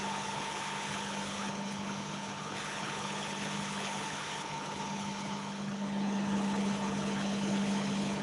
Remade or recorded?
remade